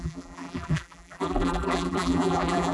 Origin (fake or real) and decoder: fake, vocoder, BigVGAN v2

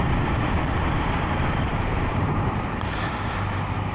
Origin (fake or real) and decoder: fake, vocoder, BigVGAN v2